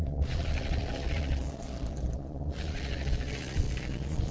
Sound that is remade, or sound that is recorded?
remade